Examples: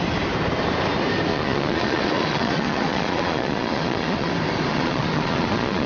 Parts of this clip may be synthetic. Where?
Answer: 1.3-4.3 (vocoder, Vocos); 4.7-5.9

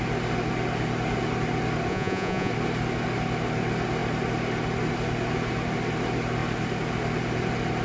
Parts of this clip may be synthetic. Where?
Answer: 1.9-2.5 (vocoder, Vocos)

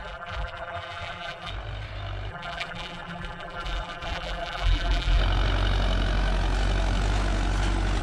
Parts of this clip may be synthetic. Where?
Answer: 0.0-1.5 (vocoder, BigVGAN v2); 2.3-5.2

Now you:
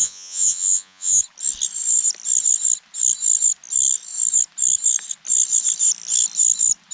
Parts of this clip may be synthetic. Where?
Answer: 0.0-1.2 (vocoder, Vocos)